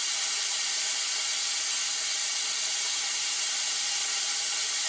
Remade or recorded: recorded